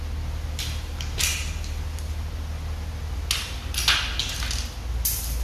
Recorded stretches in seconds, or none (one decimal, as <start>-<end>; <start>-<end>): 0.0-5.4